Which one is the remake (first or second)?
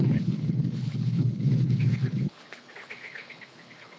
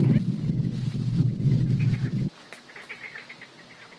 first